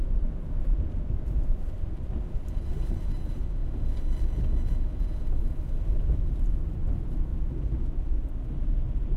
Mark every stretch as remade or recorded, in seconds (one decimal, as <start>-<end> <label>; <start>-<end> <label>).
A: 0.0-3.6 remade; 3.6-5.4 recorded; 5.4-7.3 remade; 7.3-8.5 recorded; 8.5-9.2 remade